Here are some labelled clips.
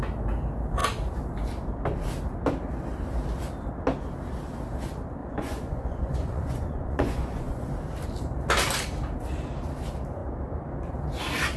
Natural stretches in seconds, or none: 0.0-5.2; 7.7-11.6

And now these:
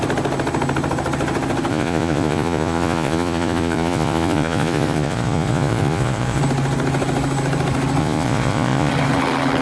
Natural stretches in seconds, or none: 0.0-1.7; 6.4-8.0; 8.9-9.6

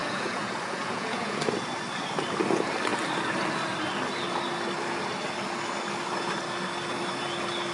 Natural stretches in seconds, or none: 1.4-7.7

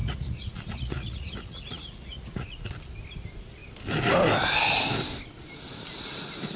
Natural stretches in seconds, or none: 2.7-6.6

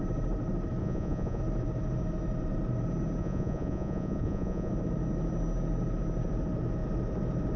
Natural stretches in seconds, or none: 0.0-0.8; 1.4-3.2; 4.7-7.6

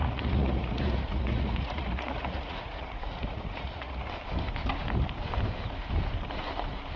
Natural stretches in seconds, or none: 4.1-7.0